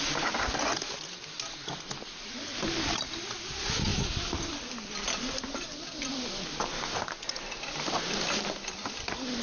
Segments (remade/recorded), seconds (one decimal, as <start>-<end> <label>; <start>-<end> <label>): 0.0-9.4 recorded